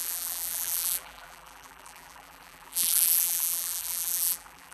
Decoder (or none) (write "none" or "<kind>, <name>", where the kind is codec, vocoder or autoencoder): vocoder, BigVGAN v2